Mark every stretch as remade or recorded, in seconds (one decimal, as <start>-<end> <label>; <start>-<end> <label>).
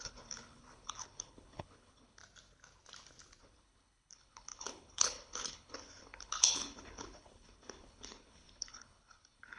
0.0-2.2 remade; 2.2-3.4 recorded; 3.4-9.6 remade